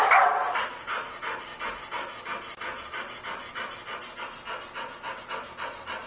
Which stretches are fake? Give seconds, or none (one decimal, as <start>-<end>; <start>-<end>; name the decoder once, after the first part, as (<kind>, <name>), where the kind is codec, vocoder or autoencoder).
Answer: none